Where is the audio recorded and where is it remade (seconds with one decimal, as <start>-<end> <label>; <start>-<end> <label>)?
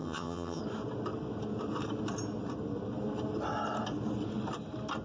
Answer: 0.0-0.6 remade; 0.6-5.0 recorded